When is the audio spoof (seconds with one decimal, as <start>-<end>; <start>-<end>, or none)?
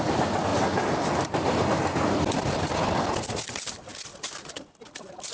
none